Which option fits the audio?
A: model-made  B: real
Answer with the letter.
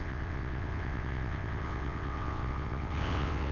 A